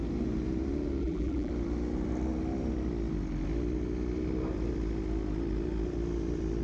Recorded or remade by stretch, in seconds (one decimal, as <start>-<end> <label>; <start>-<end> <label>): 0.0-1.0 recorded; 1.0-1.5 remade; 1.5-6.6 recorded